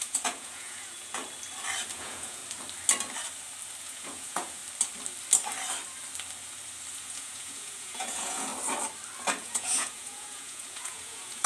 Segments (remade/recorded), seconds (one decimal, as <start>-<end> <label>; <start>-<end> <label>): 0.0-1.2 remade; 1.2-1.9 recorded; 1.9-2.4 remade; 2.4-3.8 recorded; 3.8-4.6 remade; 4.6-6.9 recorded; 6.9-8.5 remade; 8.5-9.4 recorded; 9.4-11.5 remade